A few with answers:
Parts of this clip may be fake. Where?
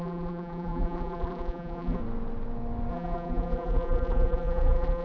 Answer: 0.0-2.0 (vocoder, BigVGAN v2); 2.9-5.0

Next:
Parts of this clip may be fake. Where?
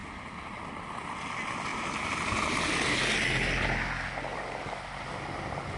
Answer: none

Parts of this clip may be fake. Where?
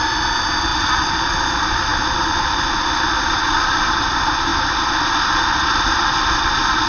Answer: 0.7-1.3 (vocoder, BigVGAN v2); 1.9-2.5